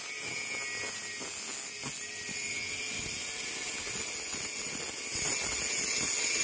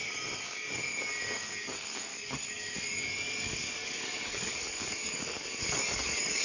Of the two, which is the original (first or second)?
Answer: first